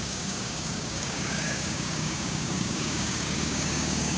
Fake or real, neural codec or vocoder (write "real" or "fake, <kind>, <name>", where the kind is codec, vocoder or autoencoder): fake, codec, DAC